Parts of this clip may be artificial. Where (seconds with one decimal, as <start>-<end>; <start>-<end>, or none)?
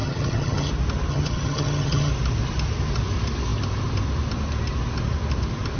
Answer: 0.0-0.7; 1.1-2.1